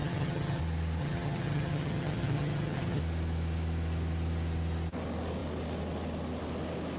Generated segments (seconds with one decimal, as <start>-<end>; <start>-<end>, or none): 0.0-0.6; 1.0-3.0